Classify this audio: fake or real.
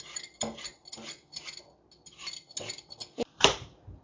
real